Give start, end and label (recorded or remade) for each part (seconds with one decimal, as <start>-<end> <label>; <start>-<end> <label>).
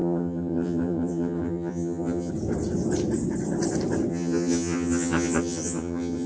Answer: 0.0-2.3 remade; 2.3-4.1 recorded; 4.1-6.3 remade